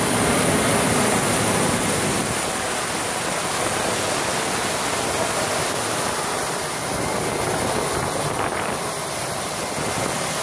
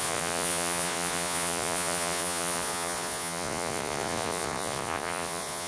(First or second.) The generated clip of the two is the second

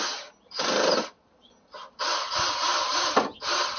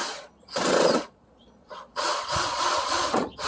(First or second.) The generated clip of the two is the second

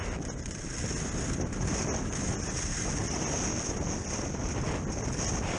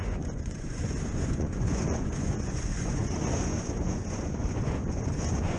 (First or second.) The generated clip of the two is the second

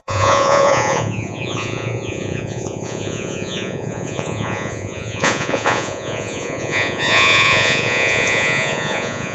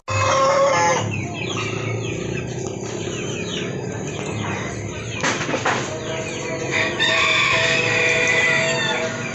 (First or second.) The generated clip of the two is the first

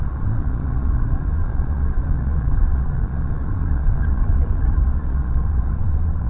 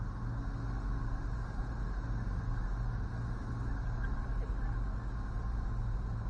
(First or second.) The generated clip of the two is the first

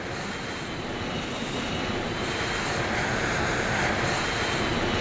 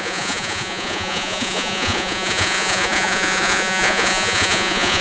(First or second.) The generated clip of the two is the second